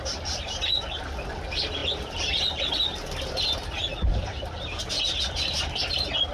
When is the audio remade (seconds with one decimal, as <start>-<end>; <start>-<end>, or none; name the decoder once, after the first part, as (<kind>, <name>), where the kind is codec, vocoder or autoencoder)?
3.9-5.0 (vocoder, BigVGAN v2)